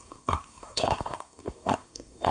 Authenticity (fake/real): fake